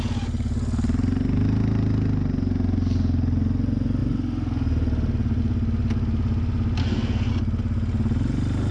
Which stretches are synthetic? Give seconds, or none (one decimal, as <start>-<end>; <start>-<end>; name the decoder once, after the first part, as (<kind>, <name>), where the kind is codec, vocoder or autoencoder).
6.8-7.3 (codec, SNAC)